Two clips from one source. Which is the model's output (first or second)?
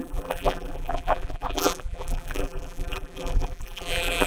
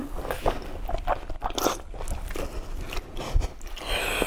first